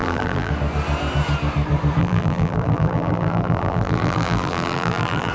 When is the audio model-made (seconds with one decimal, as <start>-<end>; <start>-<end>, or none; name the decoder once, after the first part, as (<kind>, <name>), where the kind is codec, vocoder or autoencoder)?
0.0-0.5 (vocoder, BigVGAN v2); 2.0-5.3